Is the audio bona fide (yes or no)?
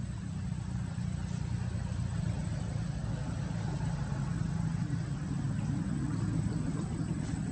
no